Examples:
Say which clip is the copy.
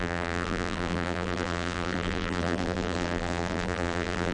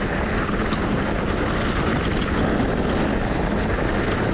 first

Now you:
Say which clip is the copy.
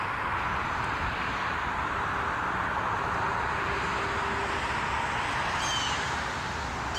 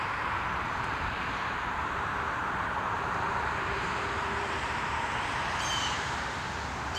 second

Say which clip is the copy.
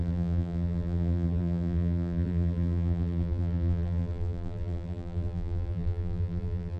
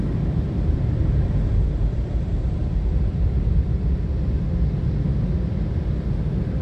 first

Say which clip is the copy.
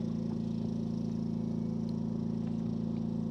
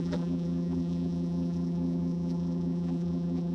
second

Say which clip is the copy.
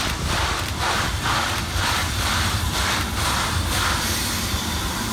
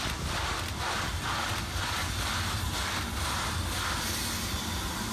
first